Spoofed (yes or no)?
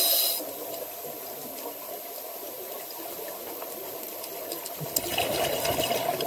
no